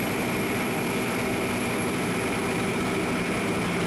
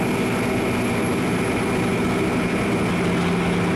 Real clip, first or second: second